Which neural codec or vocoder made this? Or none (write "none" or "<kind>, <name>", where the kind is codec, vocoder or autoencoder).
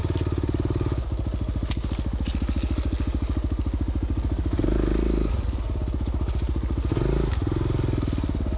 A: none